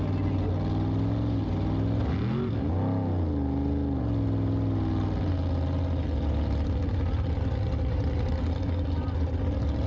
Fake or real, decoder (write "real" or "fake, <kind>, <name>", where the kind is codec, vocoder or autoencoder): real